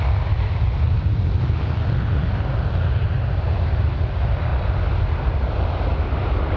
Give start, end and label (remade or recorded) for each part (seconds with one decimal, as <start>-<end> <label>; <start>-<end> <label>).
0.0-3.0 recorded; 3.0-3.8 remade; 3.8-6.6 recorded